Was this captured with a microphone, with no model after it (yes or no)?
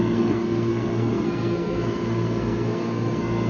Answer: no